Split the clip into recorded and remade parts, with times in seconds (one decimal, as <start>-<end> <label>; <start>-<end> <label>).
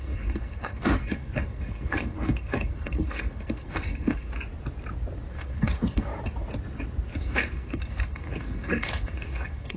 0.0-4.3 remade; 4.3-5.3 recorded; 5.3-6.1 remade; 6.1-7.2 recorded; 7.2-9.8 remade